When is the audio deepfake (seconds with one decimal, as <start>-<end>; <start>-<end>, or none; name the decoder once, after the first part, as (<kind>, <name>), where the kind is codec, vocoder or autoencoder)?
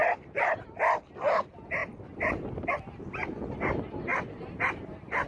4.1-5.3 (vocoder, BigVGAN v2)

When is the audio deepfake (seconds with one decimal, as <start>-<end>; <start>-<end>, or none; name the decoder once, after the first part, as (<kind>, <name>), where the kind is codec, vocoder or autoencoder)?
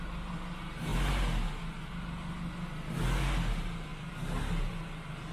none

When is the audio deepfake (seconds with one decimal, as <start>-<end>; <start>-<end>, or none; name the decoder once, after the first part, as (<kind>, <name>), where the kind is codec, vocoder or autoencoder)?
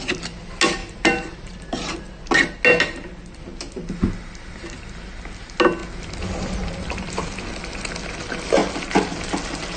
0.8-1.6 (vocoder, BigVGAN v2)